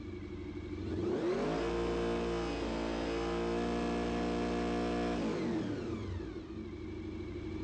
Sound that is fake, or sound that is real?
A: real